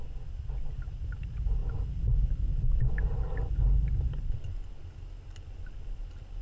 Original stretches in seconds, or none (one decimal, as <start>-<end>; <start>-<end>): 0.0-6.4